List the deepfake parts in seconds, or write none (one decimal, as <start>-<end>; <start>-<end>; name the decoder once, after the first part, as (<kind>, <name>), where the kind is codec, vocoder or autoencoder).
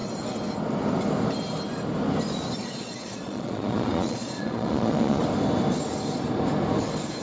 2.6-5.2 (vocoder, Vocos)